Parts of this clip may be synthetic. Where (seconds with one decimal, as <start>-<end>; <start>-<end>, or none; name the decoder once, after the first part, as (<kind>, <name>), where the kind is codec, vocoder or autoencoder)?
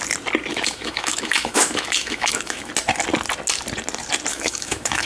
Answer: 0.5-2.7 (autoencoder, DAC-VAE); 4.3-5.1